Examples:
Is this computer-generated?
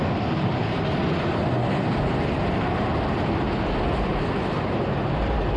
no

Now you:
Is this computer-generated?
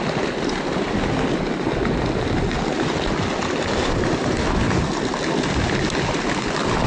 no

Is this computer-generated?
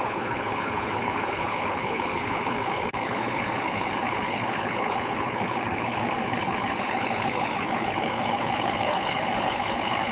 yes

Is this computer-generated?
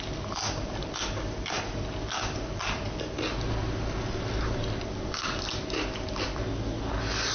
no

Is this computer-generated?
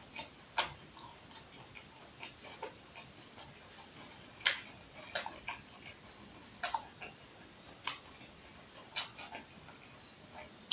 no